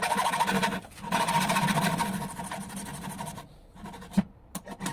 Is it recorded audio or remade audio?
remade